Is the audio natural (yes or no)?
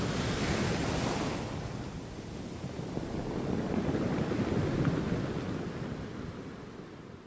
yes